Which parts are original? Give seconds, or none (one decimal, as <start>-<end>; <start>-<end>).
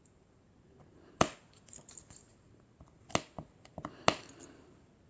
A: 0.0-5.1